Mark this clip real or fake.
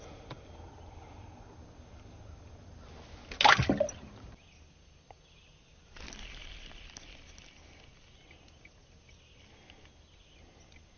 real